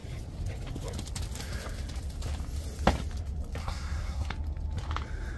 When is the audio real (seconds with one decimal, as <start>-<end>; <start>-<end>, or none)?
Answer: 0.0-3.6; 4.3-5.4